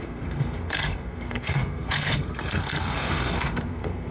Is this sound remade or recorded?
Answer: remade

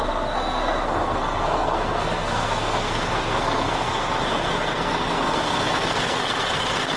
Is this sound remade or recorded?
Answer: remade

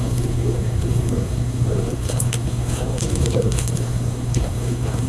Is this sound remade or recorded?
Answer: remade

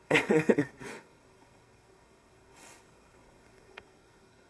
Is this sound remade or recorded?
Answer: remade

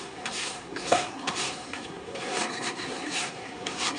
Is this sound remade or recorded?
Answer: remade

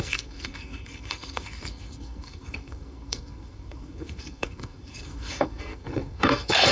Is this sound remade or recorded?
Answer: remade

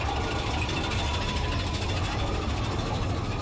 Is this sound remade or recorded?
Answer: recorded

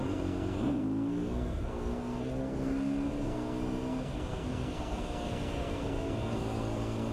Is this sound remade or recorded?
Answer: remade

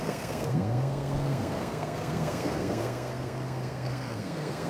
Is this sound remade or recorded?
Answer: remade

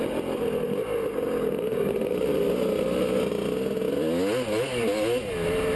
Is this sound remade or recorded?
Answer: recorded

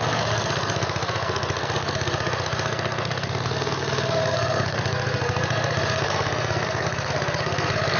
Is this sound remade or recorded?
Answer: remade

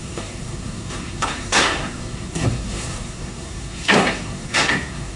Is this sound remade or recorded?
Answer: remade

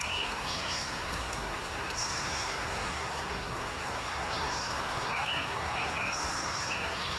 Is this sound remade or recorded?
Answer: remade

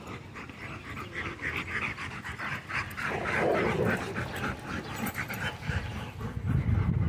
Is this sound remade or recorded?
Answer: recorded